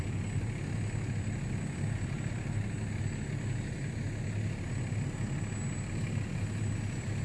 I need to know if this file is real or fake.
real